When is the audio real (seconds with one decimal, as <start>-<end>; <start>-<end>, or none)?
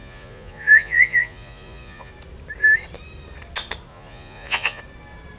2.1-3.9; 4.8-5.4